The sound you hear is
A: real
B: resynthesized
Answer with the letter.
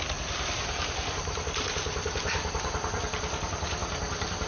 A